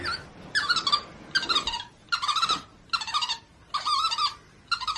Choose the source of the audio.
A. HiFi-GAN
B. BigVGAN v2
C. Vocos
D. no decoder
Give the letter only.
D